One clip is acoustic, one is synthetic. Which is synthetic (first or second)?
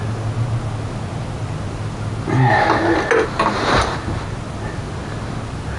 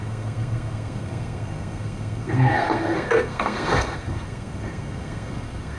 second